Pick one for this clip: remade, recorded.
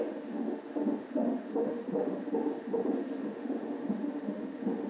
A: remade